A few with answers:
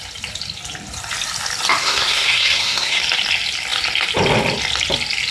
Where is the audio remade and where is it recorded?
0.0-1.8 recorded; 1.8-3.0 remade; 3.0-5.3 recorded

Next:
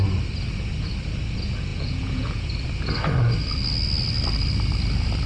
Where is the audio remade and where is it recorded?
0.0-1.7 recorded; 1.7-2.5 remade; 2.5-5.3 recorded

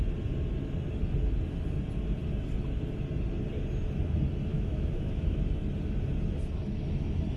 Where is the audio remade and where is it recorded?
0.0-4.5 recorded; 4.5-5.4 remade; 5.4-7.4 recorded

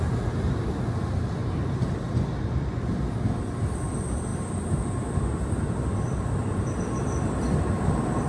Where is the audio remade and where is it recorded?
0.0-1.4 recorded; 1.4-1.9 remade; 1.9-8.3 recorded

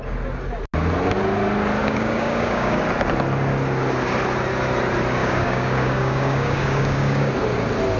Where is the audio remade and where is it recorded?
0.0-1.8 recorded; 1.8-2.8 remade; 2.8-5.2 recorded; 5.2-7.3 remade; 7.3-8.0 recorded